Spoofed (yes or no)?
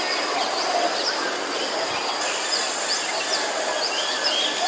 no